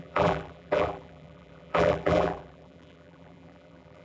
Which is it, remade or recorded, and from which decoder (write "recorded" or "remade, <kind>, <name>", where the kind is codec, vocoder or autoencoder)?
remade, vocoder, BigVGAN v2